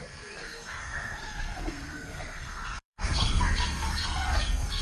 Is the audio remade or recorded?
remade